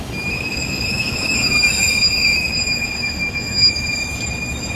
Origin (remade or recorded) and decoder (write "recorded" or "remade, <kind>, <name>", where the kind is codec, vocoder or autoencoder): remade, autoencoder, DAC-VAE